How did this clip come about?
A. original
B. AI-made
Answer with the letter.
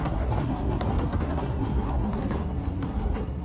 B